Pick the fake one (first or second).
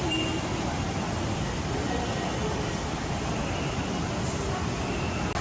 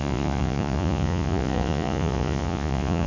second